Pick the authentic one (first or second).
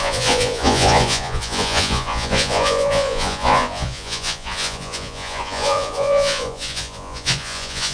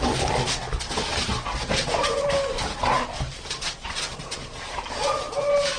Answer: second